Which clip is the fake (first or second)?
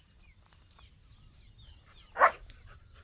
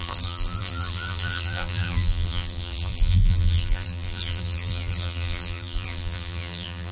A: second